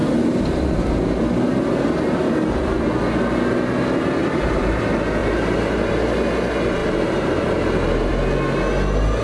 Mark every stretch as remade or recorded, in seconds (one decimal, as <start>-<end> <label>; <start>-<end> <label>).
0.0-0.6 remade; 0.6-4.2 recorded; 4.2-4.8 remade; 4.8-5.2 recorded; 5.2-5.9 remade; 5.9-6.8 recorded; 6.8-8.1 remade; 8.1-9.2 recorded